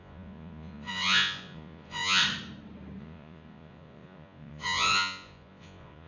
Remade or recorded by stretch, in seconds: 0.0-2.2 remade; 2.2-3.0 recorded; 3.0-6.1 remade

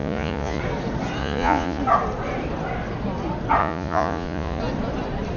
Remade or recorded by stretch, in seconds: 0.0-0.6 remade; 0.6-1.2 recorded; 1.2-1.8 remade; 1.8-3.6 recorded; 3.6-4.6 remade; 4.6-5.4 recorded

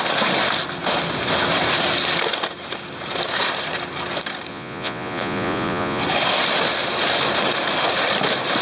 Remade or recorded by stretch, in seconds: 0.0-4.5 recorded; 4.5-6.0 remade; 6.0-8.6 recorded

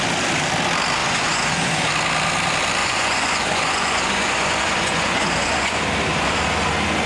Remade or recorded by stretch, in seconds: 0.0-1.0 recorded; 1.0-1.9 remade; 1.9-2.8 recorded; 2.8-5.8 remade; 5.8-7.1 recorded

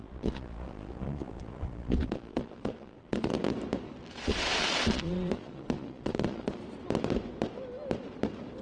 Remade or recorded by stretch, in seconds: 0.0-3.3 remade; 3.3-4.1 recorded; 4.1-6.6 remade; 6.6-8.6 recorded